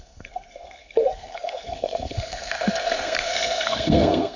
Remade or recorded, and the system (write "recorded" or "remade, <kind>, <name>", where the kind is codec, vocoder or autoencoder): remade, codec, SNAC